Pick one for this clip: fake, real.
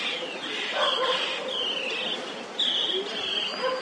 real